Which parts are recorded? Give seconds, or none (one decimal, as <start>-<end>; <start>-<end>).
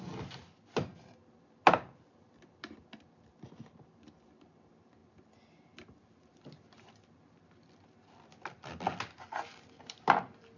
0.0-10.6